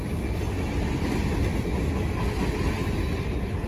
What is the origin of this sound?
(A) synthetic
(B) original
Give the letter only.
B